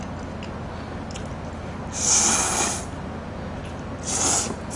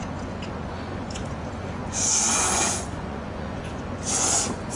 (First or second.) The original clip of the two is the first